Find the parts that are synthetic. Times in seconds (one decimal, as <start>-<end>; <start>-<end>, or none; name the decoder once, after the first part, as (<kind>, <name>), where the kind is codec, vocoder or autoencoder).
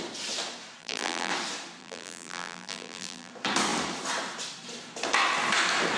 0.8-1.3 (vocoder, BigVGAN v2); 1.8-3.3